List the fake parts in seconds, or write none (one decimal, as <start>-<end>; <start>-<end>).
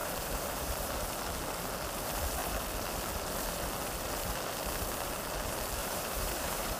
0.0-1.0; 5.8-6.8